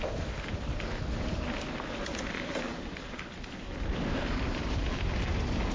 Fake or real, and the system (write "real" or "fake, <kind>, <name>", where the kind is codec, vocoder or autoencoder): real